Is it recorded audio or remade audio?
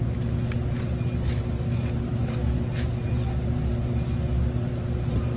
recorded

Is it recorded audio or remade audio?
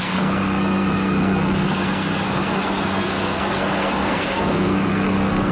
remade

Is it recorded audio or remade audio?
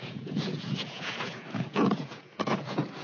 remade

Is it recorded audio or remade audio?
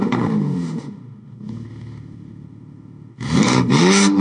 remade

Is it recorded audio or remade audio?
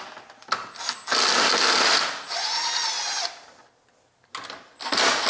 recorded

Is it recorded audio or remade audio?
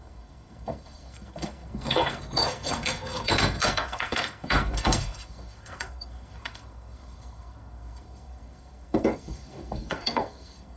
remade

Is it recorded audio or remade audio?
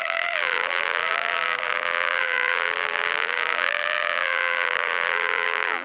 remade